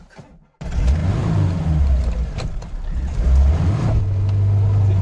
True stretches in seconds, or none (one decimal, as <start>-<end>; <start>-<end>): 0.0-1.0; 4.0-5.0